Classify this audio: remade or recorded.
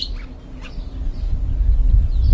recorded